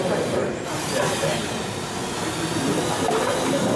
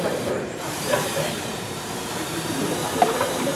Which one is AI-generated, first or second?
second